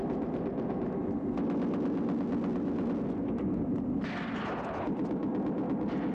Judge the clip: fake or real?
real